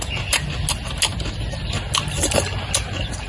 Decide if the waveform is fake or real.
real